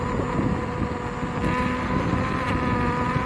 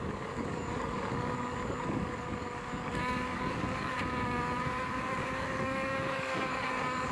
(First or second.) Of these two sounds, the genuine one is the first